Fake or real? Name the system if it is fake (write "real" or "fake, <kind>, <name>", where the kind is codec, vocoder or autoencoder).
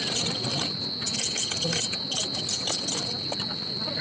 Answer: real